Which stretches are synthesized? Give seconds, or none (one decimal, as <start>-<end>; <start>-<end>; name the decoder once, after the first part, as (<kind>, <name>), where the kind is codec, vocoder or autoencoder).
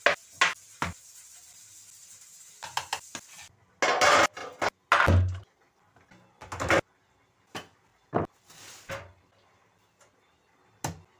none